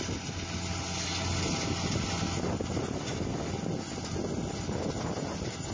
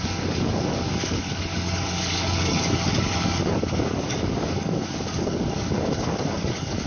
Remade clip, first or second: second